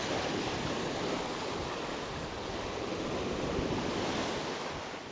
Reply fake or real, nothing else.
real